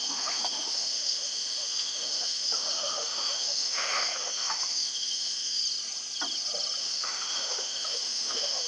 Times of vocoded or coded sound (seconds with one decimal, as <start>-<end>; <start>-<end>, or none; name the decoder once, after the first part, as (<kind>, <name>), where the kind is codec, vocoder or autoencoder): 0.0-5.6 (autoencoder, DAC-VAE); 6.8-8.7